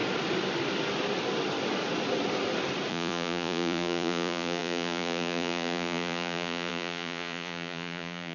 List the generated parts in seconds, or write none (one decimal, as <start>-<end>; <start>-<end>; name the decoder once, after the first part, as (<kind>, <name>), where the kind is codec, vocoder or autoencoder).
2.9-8.3 (vocoder, Vocos)